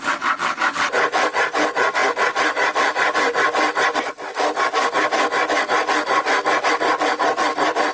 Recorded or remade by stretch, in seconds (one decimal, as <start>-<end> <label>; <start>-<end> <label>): 0.0-7.9 recorded